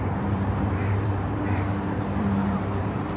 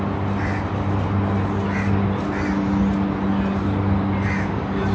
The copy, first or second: first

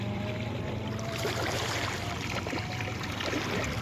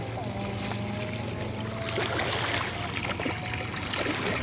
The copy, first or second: first